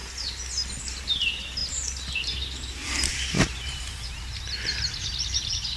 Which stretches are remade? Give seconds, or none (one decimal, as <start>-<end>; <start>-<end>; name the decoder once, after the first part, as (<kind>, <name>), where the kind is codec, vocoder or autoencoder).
0.8-1.6 (vocoder, BigVGAN v2); 2.1-5.8